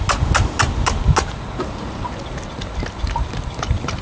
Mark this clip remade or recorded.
recorded